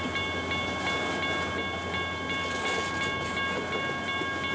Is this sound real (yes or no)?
yes